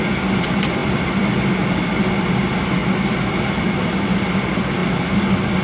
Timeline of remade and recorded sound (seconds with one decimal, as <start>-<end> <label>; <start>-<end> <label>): 0.0-2.8 remade; 2.8-4.3 recorded; 4.3-5.6 remade